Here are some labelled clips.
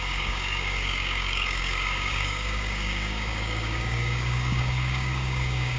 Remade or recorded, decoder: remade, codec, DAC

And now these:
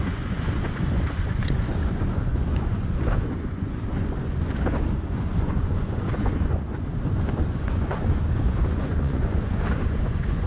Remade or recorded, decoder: remade, vocoder, Vocos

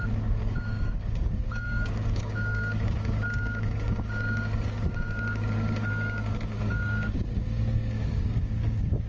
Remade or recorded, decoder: remade, codec, DAC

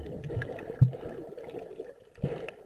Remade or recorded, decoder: recorded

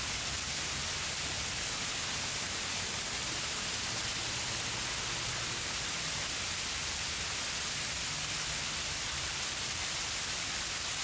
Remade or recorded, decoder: recorded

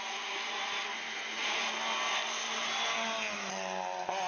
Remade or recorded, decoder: recorded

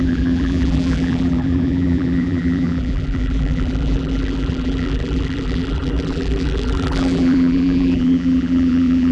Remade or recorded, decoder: remade, vocoder, BigVGAN v2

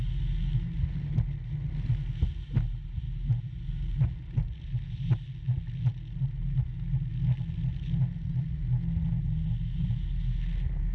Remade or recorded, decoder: recorded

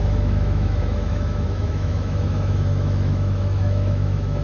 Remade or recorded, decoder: remade, autoencoder, DAC-VAE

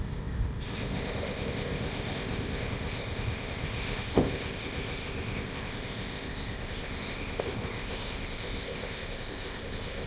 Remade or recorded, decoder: remade, codec, ZipCodec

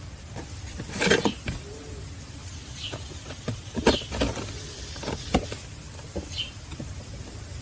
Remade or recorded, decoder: recorded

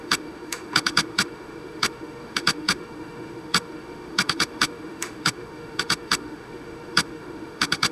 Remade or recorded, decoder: remade, autoencoder, DAC-VAE